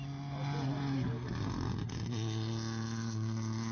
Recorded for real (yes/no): yes